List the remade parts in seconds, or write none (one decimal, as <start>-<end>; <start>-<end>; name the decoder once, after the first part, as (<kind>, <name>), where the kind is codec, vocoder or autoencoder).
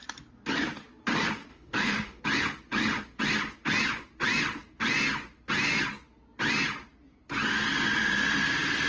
1.5-2.2 (autoencoder, DAC-VAE)